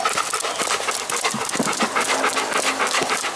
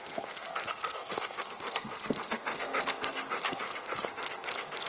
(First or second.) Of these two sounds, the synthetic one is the second